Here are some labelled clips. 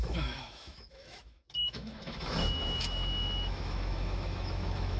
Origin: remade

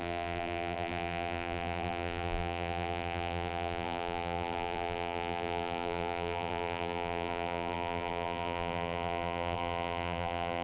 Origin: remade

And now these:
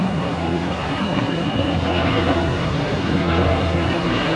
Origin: remade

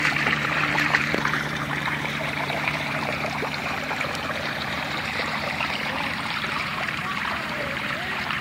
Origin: remade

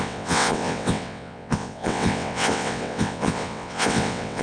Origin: remade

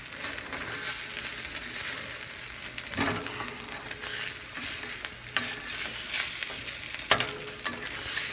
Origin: recorded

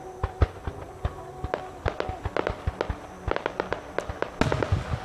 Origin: recorded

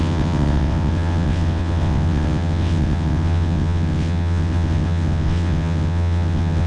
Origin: remade